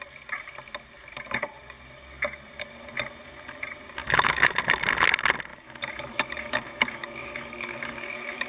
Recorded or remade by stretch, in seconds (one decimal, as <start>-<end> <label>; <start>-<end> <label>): 0.0-4.0 recorded; 4.0-4.6 remade; 4.6-5.5 recorded; 5.5-8.5 remade